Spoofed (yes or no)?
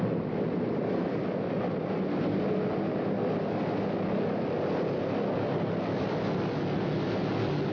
no